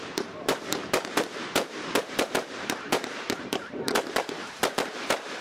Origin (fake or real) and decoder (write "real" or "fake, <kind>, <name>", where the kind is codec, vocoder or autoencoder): fake, vocoder, BigVGAN v2